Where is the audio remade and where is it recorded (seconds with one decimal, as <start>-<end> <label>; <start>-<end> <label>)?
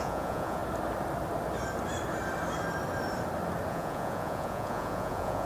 0.0-0.6 remade; 0.6-3.7 recorded; 3.7-5.5 remade